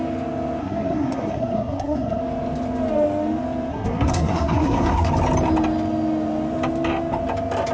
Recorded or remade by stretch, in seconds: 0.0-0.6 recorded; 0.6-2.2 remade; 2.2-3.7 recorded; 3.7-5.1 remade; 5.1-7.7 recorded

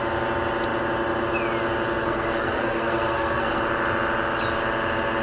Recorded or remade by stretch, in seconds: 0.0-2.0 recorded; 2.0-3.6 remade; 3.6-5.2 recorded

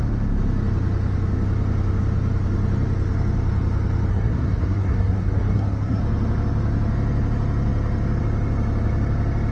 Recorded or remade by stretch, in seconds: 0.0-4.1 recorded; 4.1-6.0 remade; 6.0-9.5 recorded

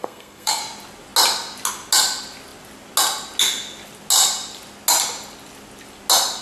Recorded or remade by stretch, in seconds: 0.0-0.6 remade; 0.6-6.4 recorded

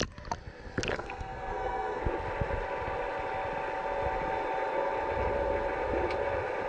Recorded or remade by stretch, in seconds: 0.0-0.9 recorded; 0.9-2.0 remade; 2.0-6.7 recorded

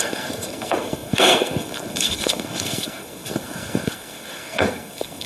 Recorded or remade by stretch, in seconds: 0.0-5.3 remade

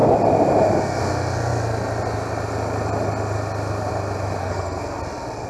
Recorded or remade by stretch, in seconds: 0.0-4.4 recorded; 4.4-5.0 remade; 5.0-5.5 recorded

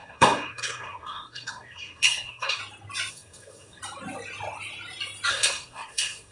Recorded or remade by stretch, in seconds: 0.0-2.6 remade; 2.6-3.1 recorded; 3.1-3.8 remade; 3.8-5.3 recorded; 5.3-6.3 remade